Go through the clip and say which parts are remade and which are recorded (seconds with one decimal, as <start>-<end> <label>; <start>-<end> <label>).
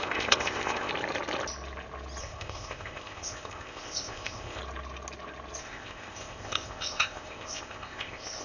0.0-0.9 remade; 0.9-2.2 recorded; 2.2-4.6 remade; 4.6-5.6 recorded; 5.6-8.4 remade